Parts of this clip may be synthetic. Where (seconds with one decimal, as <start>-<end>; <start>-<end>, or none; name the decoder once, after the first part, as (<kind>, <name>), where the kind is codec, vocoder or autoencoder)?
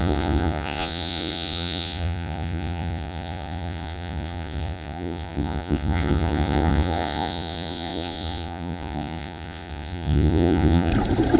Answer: 0.0-10.9 (vocoder, Vocos)